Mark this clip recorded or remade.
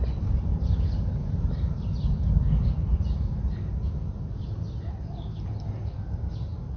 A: recorded